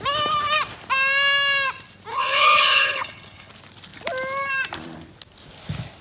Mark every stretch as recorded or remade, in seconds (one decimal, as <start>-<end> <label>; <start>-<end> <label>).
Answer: 0.0-2.1 recorded; 2.1-3.5 remade; 3.5-6.0 recorded